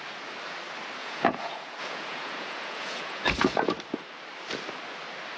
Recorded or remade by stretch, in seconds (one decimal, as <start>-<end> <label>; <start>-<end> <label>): 0.0-1.0 recorded; 1.0-3.7 remade; 3.7-5.4 recorded